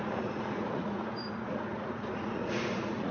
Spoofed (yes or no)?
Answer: yes